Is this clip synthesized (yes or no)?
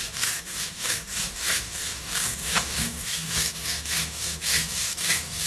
yes